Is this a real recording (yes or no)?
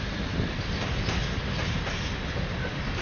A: yes